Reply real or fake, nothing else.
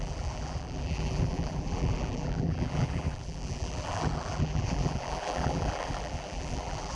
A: fake